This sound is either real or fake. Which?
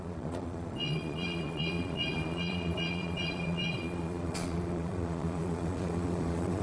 fake